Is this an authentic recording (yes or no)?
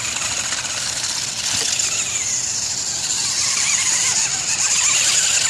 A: yes